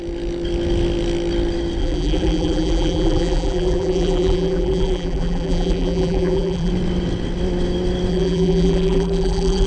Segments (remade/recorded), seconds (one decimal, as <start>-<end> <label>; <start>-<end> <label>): 0.0-1.8 recorded; 1.8-6.7 remade; 6.7-8.1 recorded; 8.1-9.7 remade